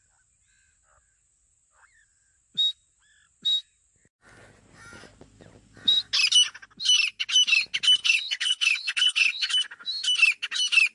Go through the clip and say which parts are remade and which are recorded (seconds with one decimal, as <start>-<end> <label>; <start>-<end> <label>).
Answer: 0.0-8.0 recorded; 8.0-9.5 remade; 9.5-10.9 recorded